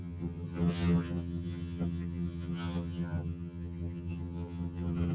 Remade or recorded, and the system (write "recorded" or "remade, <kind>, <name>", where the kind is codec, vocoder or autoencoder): remade, vocoder, HiFi-GAN